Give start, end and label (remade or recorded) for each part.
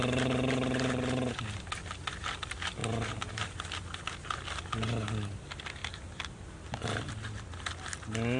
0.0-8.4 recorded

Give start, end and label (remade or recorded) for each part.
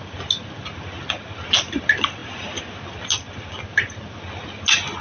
0.0-5.0 recorded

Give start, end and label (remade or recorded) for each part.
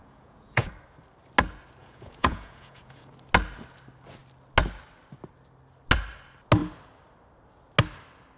0.0-0.7 remade; 0.7-1.8 recorded; 1.8-3.1 remade; 3.1-8.4 recorded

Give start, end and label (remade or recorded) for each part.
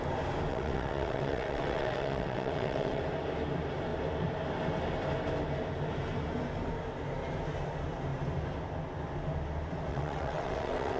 0.0-0.5 recorded; 0.5-3.0 remade; 3.0-9.9 recorded; 9.9-11.0 remade